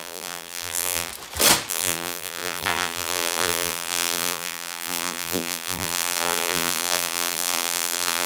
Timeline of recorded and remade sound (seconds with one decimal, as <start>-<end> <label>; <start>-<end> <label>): 0.0-1.1 remade; 1.1-1.7 recorded; 1.7-8.3 remade